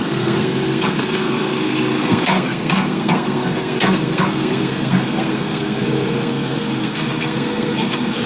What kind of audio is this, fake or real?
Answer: fake